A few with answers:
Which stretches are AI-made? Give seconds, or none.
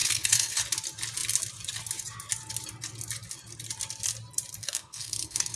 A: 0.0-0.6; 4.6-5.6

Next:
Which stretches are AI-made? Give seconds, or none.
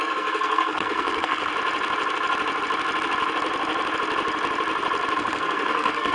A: 0.0-1.5; 5.2-6.1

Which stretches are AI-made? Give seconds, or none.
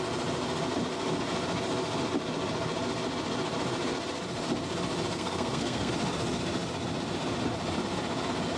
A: 5.1-5.9